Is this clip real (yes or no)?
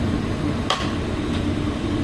yes